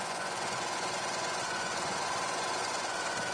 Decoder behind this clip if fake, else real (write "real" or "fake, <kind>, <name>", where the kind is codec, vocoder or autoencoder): fake, vocoder, Vocos